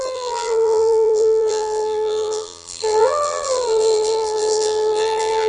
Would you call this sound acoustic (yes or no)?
no